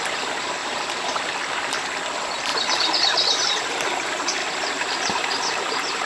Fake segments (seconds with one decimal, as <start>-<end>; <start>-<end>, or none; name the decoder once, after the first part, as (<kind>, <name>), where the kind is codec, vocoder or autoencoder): 0.6-1.2 (vocoder, BigVGAN v2); 2.5-3.6; 4.4-6.1

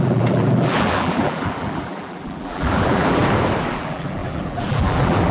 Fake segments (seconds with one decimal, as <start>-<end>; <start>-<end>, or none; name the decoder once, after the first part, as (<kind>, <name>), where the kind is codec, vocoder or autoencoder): 0.0-3.2 (vocoder, BigVGAN v2); 3.7-5.3

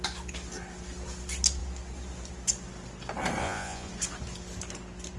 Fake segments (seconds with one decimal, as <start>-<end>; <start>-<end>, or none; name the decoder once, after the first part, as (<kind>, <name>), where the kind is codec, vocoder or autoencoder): 3.4-3.9 (vocoder, Vocos)

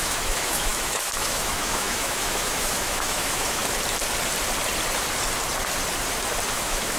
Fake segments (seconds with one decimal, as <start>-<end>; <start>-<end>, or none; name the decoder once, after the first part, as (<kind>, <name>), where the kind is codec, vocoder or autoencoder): 0.0-3.6 (autoencoder, DAC-VAE); 6.5-7.0

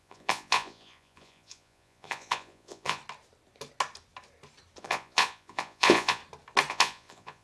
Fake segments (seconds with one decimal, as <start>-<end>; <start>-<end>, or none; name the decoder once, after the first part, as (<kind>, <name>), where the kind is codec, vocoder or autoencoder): 0.0-3.0 (vocoder, Vocos); 4.8-6.2; 6.7-7.4

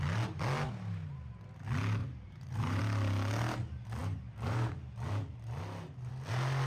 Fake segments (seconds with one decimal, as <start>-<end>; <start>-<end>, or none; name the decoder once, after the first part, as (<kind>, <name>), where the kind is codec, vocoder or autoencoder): 2.0-2.8 (vocoder, BigVGAN v2)

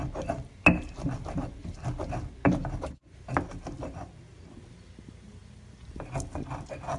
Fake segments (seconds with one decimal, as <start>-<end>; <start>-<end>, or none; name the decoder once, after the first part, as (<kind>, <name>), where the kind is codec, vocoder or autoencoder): none